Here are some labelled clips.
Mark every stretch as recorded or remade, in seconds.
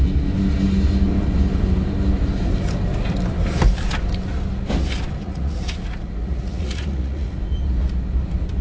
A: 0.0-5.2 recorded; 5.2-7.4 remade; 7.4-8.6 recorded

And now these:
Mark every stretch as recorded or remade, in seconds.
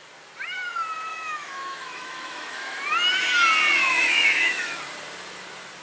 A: 0.0-1.1 recorded; 1.1-2.8 remade; 2.8-3.8 recorded; 3.8-4.8 remade; 4.8-5.8 recorded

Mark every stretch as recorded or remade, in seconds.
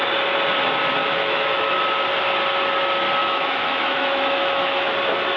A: 0.0-1.0 recorded; 1.0-1.8 remade; 1.8-3.2 recorded; 3.2-4.9 remade; 4.9-5.4 recorded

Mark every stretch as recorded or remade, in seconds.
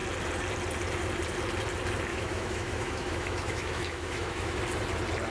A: 0.0-2.1 recorded; 2.1-4.6 remade; 4.6-5.3 recorded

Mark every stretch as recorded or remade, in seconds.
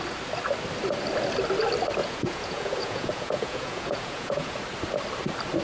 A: 0.0-2.0 recorded; 2.0-4.6 remade; 4.6-5.6 recorded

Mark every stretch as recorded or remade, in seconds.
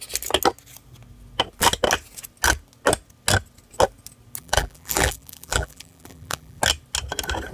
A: 0.0-4.4 recorded; 4.4-6.6 remade; 6.6-7.5 recorded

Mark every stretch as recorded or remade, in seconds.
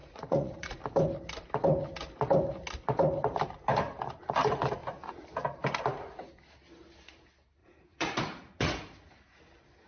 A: 0.0-0.8 remade; 0.8-7.6 recorded; 7.6-9.4 remade; 9.4-9.9 recorded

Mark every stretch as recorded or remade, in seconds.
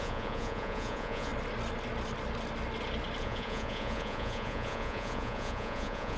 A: 0.0-1.3 remade; 1.3-3.2 recorded; 3.2-6.2 remade